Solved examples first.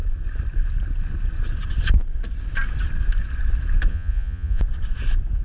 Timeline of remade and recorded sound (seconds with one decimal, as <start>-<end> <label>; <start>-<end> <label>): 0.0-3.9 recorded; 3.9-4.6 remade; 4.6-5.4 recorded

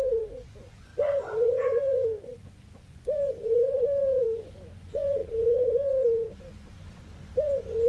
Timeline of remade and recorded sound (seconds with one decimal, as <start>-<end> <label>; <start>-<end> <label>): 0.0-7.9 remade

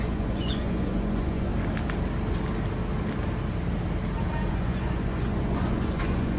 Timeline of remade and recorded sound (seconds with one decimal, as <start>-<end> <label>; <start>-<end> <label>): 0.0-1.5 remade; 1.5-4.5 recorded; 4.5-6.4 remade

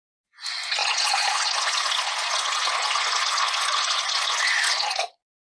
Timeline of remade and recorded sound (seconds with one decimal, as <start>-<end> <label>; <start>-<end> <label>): 0.0-5.4 remade